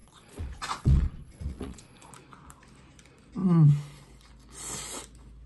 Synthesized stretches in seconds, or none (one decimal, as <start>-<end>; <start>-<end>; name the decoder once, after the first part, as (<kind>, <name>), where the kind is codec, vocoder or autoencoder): 0.0-2.1 (vocoder, Vocos)